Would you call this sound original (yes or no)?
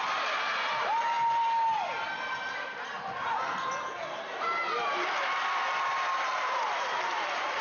yes